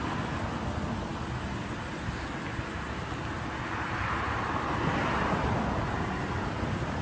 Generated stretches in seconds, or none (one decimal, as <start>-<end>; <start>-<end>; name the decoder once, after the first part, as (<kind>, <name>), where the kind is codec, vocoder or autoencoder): none